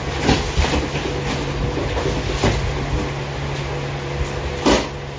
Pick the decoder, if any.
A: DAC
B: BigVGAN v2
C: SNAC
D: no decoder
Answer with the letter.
D